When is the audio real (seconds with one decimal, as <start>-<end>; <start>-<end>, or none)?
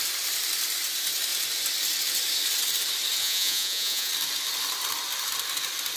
0.0-3.2; 4.1-6.0